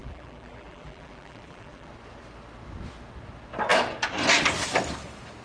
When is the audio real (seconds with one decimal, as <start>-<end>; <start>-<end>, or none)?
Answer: 1.9-5.4